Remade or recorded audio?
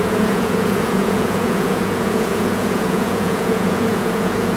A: remade